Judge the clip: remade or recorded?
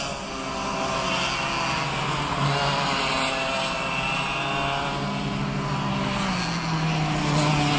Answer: recorded